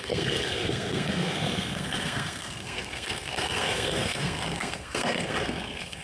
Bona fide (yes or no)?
no